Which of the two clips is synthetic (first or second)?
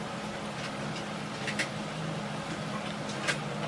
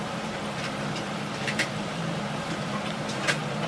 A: second